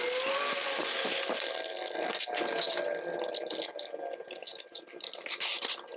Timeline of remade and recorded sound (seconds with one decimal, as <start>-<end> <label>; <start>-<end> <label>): 0.0-6.0 recorded

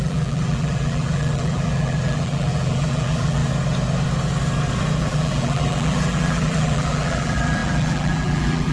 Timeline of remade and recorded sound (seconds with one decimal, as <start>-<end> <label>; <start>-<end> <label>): 0.0-3.4 remade; 3.4-5.0 recorded; 5.0-8.7 remade